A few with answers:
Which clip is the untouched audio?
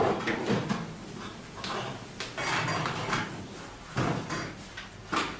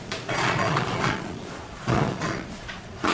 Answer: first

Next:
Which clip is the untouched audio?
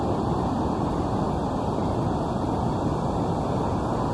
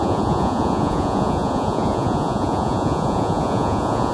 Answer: first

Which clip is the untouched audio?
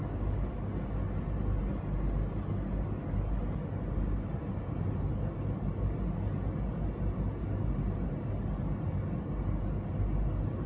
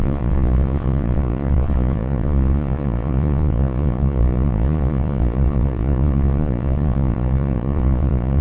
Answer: first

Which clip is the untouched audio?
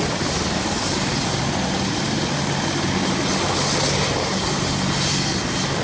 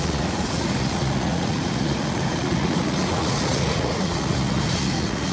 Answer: first